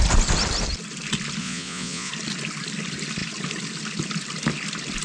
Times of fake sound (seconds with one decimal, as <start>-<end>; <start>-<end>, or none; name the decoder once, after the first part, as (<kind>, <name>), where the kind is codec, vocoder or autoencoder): 1.4-2.1 (vocoder, Vocos)